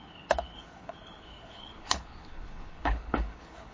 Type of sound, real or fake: fake